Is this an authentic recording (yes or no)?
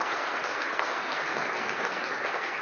no